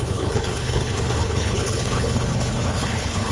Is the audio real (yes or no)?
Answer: no